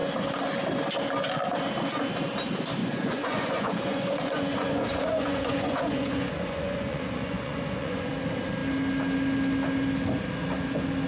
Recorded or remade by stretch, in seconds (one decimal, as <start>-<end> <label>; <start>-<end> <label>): 0.0-2.8 recorded; 2.8-8.1 remade; 8.1-11.1 recorded